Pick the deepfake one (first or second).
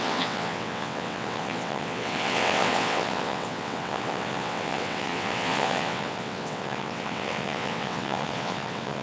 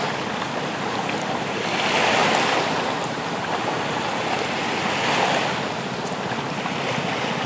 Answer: first